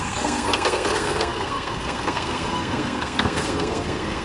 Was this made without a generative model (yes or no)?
no